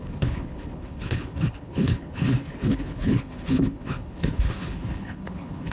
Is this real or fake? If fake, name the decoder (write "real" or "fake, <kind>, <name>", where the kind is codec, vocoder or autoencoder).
fake, codec, HILCodec